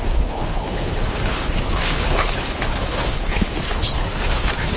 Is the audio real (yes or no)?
no